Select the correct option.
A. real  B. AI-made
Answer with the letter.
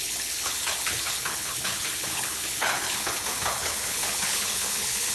B